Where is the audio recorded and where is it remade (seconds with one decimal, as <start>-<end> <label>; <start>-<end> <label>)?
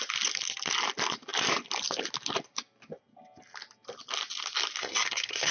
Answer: 0.0-4.8 recorded; 4.8-5.5 remade